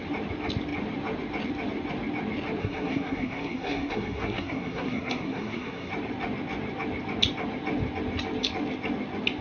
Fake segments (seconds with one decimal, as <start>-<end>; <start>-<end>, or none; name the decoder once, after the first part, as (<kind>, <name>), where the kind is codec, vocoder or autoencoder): 2.6-5.9 (codec, SNAC)